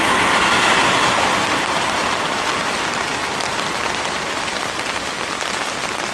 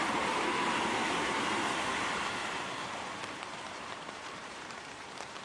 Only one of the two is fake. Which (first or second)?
second